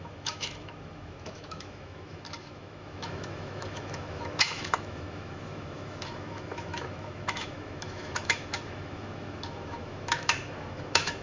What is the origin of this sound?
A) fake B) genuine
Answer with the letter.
A